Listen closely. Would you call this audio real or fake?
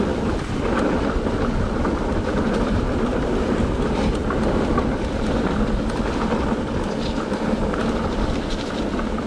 real